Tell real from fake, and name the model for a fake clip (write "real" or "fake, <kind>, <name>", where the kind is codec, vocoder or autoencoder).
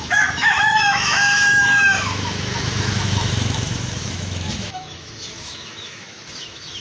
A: fake, autoencoder, DAC-VAE